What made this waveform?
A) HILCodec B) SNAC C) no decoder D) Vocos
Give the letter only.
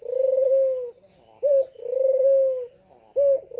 C